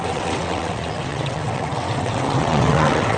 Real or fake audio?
fake